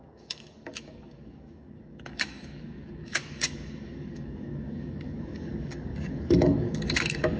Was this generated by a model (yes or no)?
yes